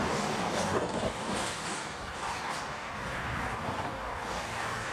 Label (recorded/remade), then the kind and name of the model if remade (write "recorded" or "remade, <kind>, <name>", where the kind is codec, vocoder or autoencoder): remade, codec, DAC